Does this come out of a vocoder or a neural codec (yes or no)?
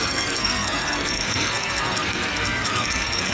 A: yes